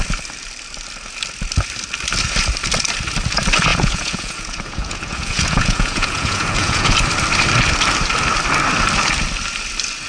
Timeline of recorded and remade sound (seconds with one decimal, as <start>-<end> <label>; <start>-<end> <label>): 0.0-3.7 recorded; 3.7-6.9 remade; 6.9-10.1 recorded